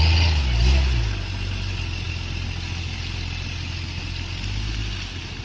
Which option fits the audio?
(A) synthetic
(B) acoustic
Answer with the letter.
B